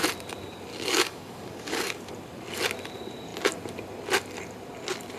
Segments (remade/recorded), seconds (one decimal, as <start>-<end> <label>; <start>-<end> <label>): 0.0-0.7 recorded; 0.7-2.1 remade; 2.1-5.2 recorded